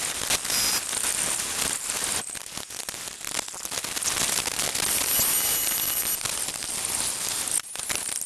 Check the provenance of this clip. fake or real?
real